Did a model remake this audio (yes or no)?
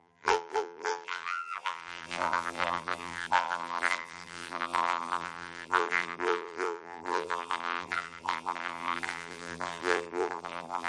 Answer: yes